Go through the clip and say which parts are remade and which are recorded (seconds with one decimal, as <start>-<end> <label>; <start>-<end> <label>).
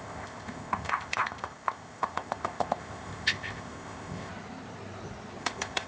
0.0-4.3 remade; 4.3-5.4 recorded; 5.4-5.9 remade